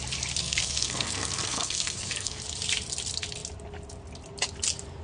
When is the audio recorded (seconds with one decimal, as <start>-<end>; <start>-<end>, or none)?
0.0-0.4; 2.4-5.0